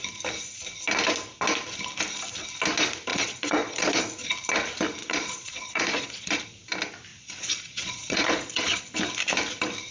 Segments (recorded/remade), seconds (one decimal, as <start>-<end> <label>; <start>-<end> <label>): 0.0-3.1 recorded; 3.1-4.0 remade; 4.0-5.0 recorded; 5.0-6.4 remade; 6.4-7.1 recorded; 7.1-8.8 remade; 8.8-9.9 recorded